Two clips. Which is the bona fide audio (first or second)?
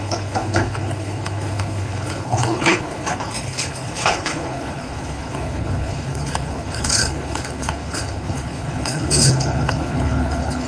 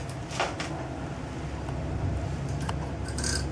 second